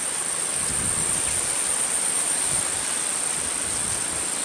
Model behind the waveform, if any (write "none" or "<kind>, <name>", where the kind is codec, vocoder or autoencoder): none